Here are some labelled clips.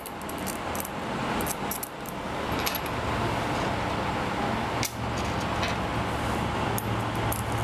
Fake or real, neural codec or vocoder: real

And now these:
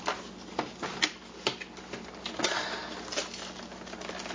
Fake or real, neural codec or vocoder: real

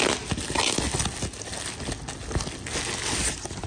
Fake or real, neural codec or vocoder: real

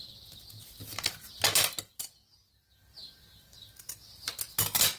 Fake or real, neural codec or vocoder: real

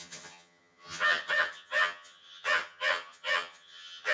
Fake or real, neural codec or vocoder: fake, vocoder, HiFi-GAN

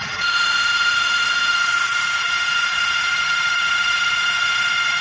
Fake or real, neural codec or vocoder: fake, vocoder, Vocos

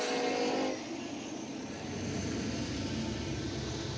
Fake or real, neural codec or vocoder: real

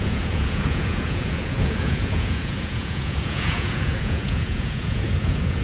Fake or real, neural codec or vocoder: fake, vocoder, Vocos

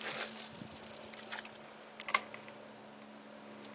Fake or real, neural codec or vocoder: real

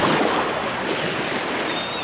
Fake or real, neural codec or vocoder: real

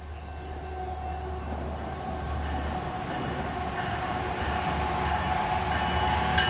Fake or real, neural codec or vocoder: real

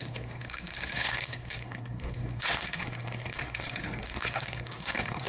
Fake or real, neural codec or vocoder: fake, codec, SNAC